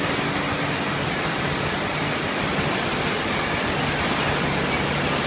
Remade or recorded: recorded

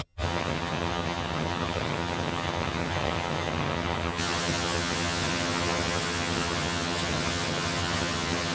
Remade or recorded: remade